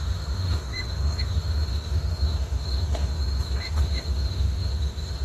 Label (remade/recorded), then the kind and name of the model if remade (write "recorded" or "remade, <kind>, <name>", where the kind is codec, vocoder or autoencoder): remade, autoencoder, DAC-VAE